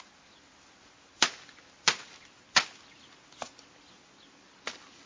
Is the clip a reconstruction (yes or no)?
no